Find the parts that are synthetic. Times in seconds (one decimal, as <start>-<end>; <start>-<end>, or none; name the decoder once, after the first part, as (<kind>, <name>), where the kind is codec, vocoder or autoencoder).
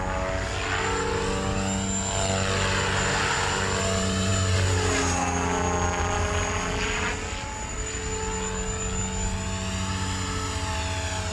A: none